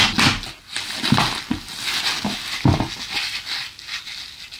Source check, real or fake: real